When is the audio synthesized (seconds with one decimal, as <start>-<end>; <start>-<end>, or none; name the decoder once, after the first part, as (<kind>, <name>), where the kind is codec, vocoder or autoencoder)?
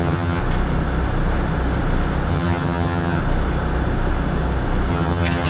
0.0-0.4 (vocoder, HiFi-GAN); 2.3-3.2; 4.9-5.5